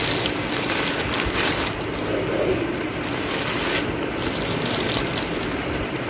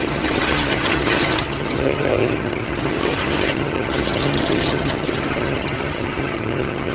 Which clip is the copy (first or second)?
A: second